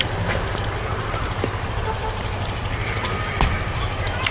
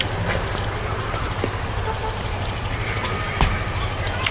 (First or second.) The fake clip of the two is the first